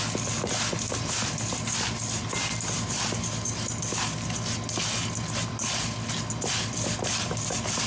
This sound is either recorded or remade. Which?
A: recorded